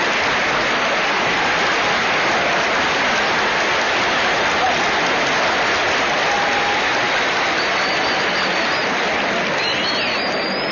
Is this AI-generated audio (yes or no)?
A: no